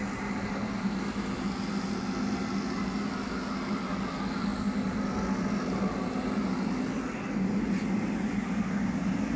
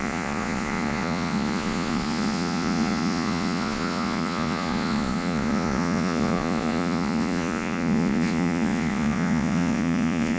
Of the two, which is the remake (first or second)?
second